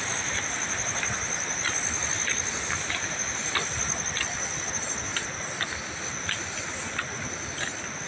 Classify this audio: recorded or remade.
recorded